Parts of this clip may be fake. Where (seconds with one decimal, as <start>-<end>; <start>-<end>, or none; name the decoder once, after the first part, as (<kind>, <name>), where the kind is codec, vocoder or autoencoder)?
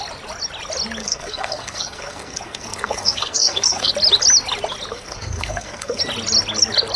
1.0-3.9 (codec, SNAC); 4.9-6.0